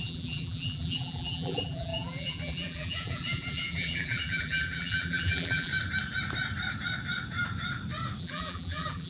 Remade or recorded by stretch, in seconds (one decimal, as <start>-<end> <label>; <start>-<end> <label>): 0.0-5.7 remade; 5.7-8.2 recorded; 8.2-9.1 remade